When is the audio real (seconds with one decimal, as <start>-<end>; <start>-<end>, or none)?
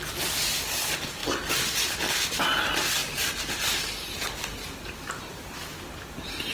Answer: 0.0-1.2; 2.4-3.0; 4.7-6.5